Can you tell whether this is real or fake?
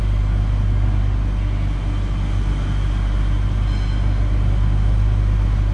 real